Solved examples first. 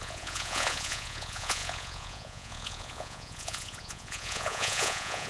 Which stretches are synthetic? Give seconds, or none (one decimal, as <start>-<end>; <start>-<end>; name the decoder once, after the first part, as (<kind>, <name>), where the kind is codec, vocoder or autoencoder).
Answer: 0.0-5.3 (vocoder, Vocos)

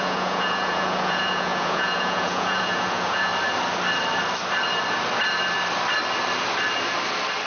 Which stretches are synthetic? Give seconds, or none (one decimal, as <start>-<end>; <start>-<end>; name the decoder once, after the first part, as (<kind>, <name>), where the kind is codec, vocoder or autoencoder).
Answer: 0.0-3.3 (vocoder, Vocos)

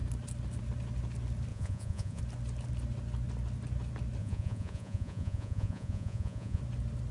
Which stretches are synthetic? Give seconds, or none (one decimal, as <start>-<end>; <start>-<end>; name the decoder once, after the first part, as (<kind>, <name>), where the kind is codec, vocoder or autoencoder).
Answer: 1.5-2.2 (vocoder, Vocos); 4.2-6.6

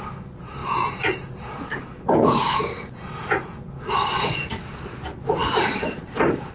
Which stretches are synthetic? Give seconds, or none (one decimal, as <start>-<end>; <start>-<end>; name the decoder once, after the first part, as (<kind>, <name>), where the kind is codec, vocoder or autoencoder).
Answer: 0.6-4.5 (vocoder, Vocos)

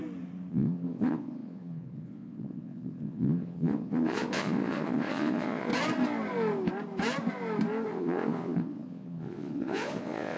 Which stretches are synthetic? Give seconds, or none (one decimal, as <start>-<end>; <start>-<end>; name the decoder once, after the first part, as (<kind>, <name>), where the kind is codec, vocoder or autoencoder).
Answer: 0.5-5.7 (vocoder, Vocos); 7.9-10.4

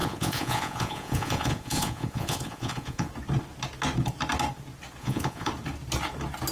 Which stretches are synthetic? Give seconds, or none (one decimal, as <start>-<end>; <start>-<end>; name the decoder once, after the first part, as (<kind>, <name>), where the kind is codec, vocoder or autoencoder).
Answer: 0.0-3.1 (vocoder, Vocos); 5.0-5.5

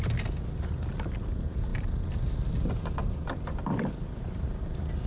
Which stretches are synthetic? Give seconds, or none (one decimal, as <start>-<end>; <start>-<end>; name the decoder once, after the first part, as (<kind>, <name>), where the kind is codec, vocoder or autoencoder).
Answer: none